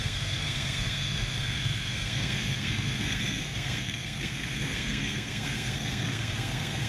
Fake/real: fake